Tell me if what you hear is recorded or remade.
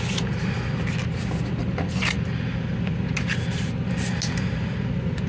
recorded